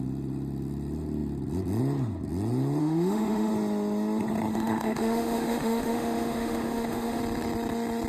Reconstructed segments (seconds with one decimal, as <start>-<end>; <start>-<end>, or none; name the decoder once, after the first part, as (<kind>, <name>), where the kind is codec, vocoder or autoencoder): 2.8-3.5 (autoencoder, DAC-VAE); 4.5-7.2